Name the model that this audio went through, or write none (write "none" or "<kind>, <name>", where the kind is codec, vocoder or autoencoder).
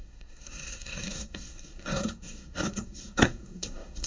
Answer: codec, SNAC